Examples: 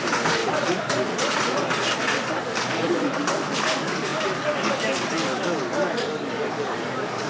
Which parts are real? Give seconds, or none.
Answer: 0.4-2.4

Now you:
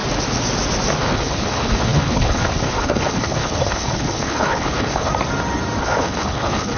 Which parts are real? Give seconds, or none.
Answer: 0.0-1.0; 5.1-5.8